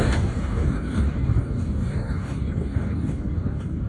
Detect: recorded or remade remade